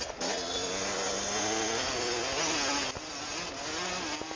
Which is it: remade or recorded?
recorded